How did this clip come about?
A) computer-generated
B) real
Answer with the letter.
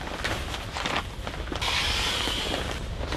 B